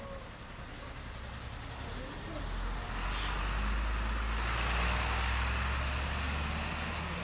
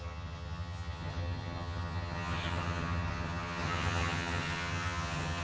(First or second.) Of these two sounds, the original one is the first